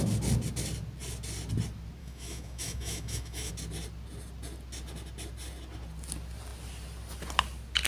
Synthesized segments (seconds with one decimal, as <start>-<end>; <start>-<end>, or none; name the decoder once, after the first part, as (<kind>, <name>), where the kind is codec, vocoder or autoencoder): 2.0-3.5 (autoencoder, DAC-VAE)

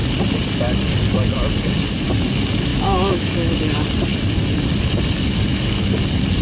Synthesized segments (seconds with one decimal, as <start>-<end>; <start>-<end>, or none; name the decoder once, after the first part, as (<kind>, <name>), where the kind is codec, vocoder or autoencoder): 2.7-3.6 (autoencoder, DAC-VAE); 5.5-6.0

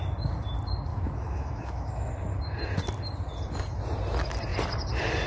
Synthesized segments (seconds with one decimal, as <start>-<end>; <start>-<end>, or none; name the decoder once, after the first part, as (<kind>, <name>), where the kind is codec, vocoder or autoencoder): 0.9-2.1 (autoencoder, DAC-VAE)

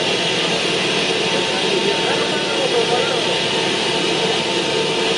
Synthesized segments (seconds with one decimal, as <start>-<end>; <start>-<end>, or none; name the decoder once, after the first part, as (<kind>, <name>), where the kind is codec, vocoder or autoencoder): none

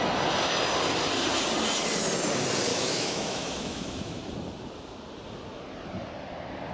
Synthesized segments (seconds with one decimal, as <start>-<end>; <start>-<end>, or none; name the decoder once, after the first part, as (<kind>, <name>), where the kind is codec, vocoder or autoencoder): 2.7-4.2 (autoencoder, DAC-VAE)